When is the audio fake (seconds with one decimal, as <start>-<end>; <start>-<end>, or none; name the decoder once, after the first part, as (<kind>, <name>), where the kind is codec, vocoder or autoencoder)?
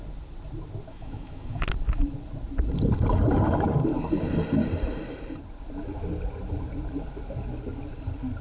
0.9-1.6 (autoencoder, DAC-VAE)